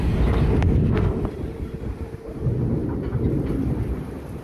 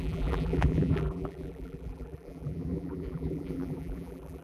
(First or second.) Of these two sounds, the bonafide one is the first